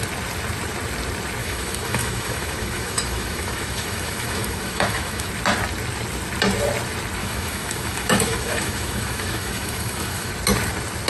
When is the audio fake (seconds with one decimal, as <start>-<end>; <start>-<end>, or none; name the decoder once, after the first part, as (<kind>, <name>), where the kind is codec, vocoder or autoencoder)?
1.4-5.3 (autoencoder, DAC-VAE); 7.2-10.3

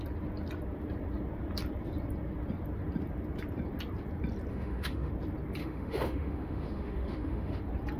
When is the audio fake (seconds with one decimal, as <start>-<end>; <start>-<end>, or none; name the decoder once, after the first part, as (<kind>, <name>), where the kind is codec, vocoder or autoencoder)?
4.5-5.1 (autoencoder, DAC-VAE); 5.6-7.6